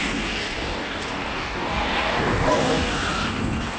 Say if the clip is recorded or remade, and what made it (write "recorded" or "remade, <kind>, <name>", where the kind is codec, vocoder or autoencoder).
remade, codec, DAC